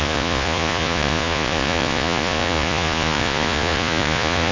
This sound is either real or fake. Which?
fake